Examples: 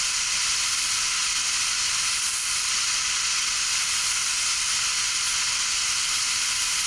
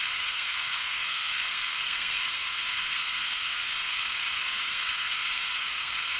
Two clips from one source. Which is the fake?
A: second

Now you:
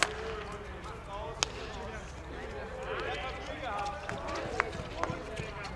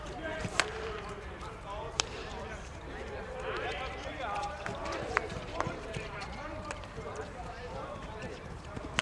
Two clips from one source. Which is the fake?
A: second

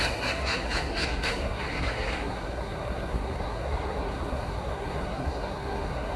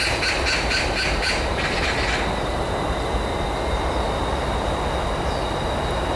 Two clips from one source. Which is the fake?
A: first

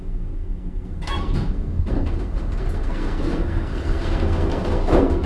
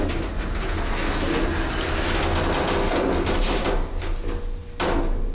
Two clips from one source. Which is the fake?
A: first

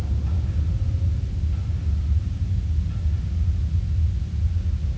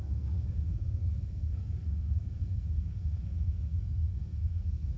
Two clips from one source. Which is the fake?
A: second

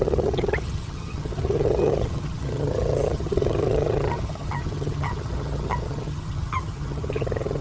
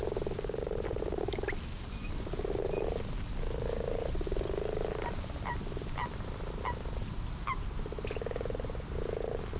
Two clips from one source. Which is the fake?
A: first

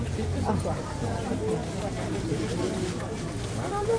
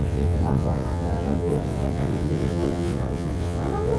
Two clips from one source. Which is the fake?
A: second